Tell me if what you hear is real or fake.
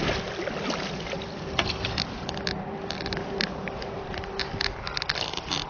real